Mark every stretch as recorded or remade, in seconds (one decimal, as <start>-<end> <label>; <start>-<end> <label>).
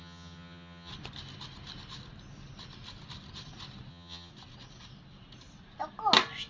0.0-0.9 remade; 0.9-3.9 recorded; 3.9-4.3 remade; 4.3-6.5 recorded